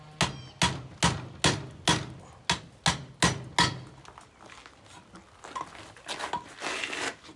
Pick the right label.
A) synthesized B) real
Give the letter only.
B